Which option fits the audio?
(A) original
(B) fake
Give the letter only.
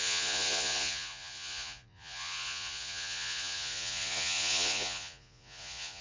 B